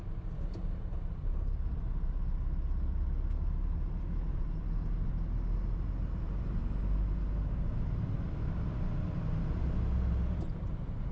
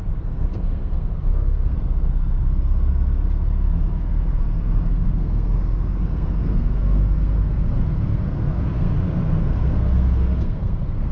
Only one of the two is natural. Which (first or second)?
first